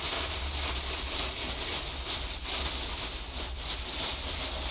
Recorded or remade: recorded